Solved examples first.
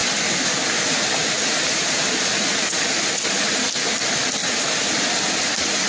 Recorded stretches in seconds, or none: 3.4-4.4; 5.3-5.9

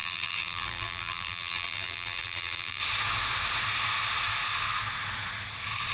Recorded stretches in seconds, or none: 2.8-5.9

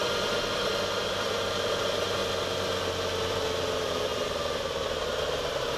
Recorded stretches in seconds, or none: 0.0-0.6; 2.2-3.3

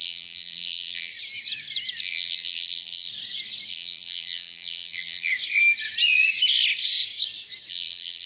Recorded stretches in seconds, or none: 1.1-2.0; 3.1-3.7; 5.3-7.7